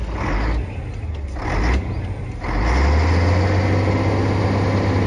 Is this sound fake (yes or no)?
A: no